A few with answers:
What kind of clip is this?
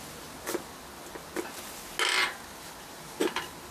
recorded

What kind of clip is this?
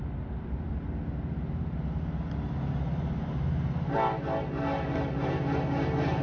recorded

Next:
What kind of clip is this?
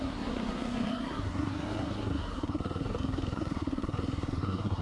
remade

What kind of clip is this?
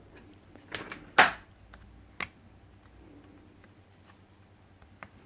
recorded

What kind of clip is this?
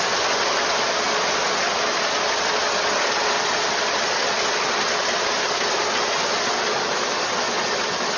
recorded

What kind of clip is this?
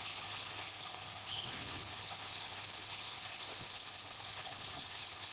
remade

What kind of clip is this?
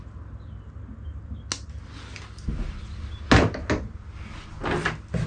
recorded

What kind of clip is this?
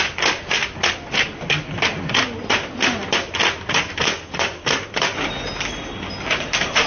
recorded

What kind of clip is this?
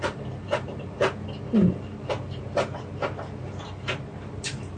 remade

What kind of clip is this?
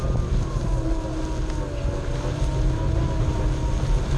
recorded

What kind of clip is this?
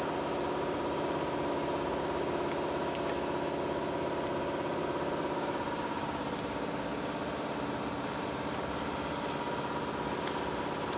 recorded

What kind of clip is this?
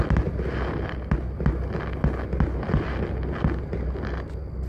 recorded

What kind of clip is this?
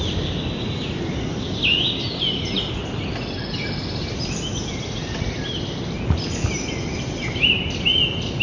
recorded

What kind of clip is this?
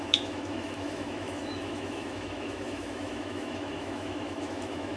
remade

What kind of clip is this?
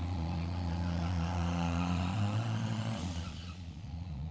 remade